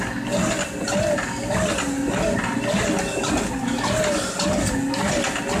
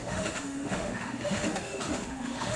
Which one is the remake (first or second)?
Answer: second